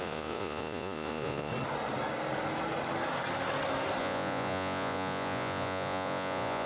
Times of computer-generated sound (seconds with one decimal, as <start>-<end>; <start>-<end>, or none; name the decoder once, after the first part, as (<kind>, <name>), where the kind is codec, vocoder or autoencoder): 0.0-1.5 (vocoder, Vocos); 4.0-6.7